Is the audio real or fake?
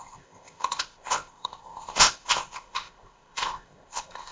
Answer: fake